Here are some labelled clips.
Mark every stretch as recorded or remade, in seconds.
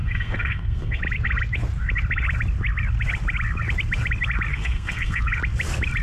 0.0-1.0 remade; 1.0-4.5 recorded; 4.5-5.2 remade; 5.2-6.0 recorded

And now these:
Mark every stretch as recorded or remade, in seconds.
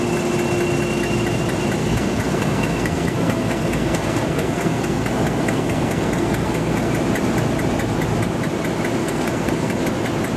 0.0-1.8 recorded; 1.8-6.9 remade; 6.9-9.0 recorded; 9.0-9.8 remade; 9.8-10.4 recorded